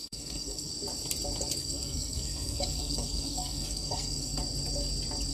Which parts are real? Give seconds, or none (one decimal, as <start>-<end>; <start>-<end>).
0.7-1.6; 4.4-5.3